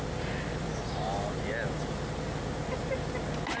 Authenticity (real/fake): real